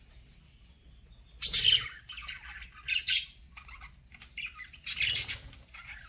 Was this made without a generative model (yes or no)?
yes